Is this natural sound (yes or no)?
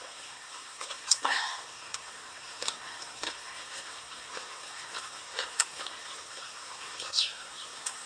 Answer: no